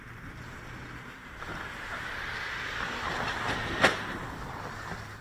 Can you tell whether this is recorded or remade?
recorded